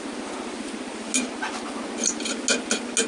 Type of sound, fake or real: real